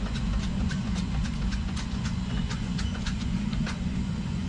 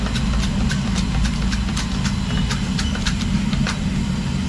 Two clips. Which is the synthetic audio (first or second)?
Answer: first